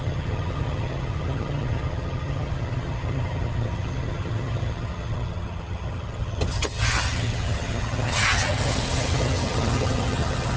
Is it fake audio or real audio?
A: fake